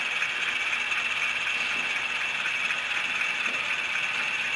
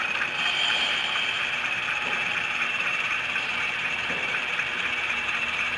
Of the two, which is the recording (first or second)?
first